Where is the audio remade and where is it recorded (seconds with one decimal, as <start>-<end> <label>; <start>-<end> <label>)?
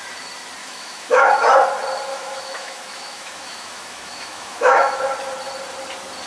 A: 0.0-0.6 recorded; 0.6-1.3 remade; 1.3-2.1 recorded; 2.1-5.0 remade; 5.0-6.3 recorded